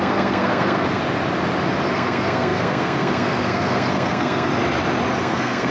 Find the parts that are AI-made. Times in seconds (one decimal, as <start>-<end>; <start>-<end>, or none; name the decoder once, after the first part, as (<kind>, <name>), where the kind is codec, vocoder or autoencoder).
0.0-1.0 (codec, SNAC); 1.9-4.5; 5.2-5.7